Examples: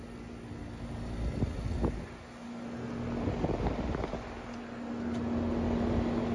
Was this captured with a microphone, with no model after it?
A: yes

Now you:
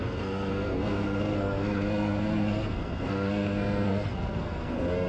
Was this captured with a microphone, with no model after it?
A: no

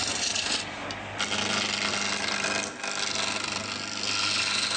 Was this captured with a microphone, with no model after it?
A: yes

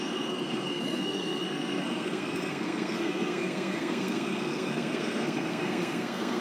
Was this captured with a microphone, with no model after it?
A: no